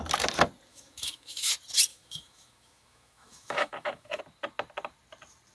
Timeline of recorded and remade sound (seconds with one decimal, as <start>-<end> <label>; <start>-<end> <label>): 0.0-0.7 recorded; 0.7-1.5 remade; 1.5-1.9 recorded; 1.9-4.2 remade; 4.2-5.5 recorded